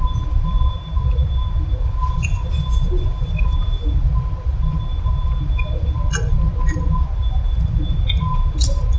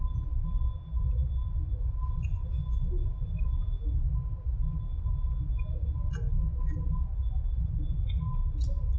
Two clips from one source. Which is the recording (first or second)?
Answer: second